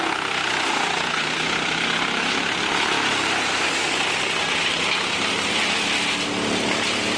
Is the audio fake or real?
real